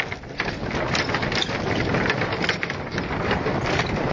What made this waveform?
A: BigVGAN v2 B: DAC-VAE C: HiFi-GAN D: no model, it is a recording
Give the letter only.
D